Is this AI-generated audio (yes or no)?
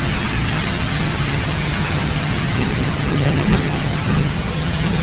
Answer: yes